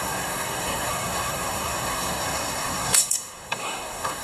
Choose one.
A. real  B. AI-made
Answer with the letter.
B